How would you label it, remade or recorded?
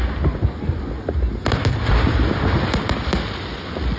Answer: recorded